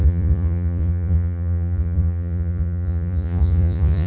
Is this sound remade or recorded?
remade